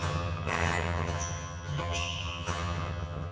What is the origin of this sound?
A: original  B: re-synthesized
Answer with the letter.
B